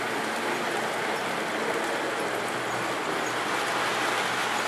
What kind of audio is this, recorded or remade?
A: recorded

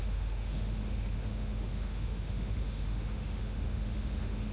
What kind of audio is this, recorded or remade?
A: remade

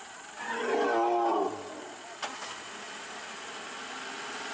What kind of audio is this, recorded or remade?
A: recorded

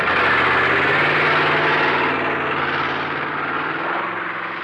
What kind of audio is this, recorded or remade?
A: recorded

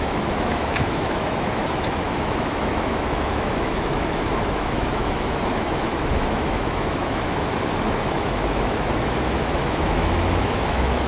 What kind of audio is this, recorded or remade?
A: remade